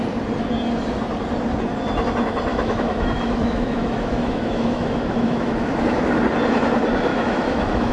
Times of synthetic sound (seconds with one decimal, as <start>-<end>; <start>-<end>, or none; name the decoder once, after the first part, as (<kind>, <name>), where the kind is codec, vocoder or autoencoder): 2.5-6.1 (autoencoder, DAC-VAE); 7.1-7.9